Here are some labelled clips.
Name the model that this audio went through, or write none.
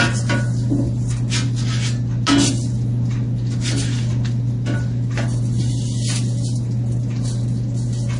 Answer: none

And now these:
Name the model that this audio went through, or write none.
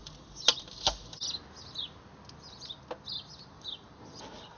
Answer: none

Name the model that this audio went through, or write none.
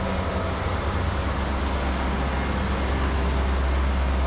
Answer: none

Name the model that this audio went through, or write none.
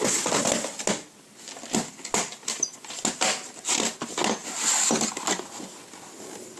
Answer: none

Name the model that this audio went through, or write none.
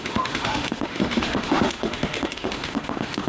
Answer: autoencoder, DAC-VAE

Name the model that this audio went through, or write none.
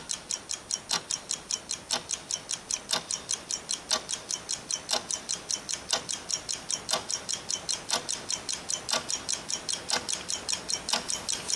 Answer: none